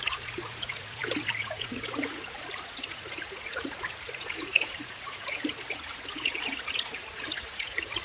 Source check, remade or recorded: remade